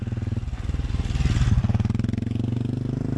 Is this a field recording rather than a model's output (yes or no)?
yes